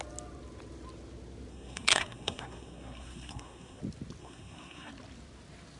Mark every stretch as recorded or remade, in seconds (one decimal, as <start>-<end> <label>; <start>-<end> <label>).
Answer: 0.0-1.5 recorded; 1.5-3.8 remade; 3.8-4.2 recorded; 4.2-4.9 remade; 4.9-5.8 recorded